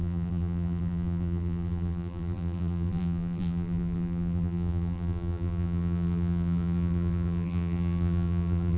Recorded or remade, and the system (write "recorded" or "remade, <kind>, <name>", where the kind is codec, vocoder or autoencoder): remade, vocoder, BigVGAN v2